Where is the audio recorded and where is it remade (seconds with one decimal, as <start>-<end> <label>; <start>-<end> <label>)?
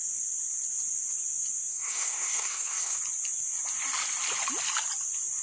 0.0-1.7 recorded; 1.7-3.0 remade; 3.0-5.4 recorded